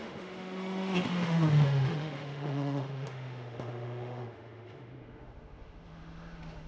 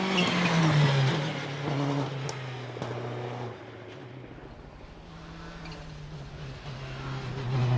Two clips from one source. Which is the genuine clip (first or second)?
second